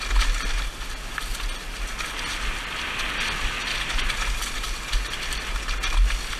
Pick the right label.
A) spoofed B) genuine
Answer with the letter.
B